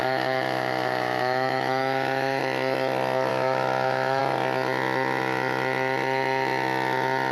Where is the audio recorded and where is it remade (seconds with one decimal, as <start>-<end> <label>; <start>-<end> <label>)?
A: 0.0-2.4 remade; 2.4-3.3 recorded; 3.3-4.2 remade; 4.2-7.3 recorded